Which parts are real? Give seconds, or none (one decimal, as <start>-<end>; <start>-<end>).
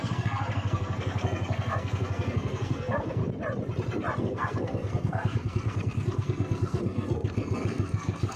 3.2-4.2